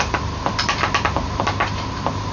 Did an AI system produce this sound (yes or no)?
no